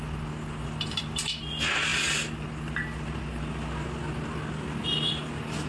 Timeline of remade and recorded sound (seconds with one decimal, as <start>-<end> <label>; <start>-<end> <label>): 0.0-5.7 recorded